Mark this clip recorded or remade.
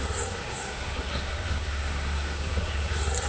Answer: remade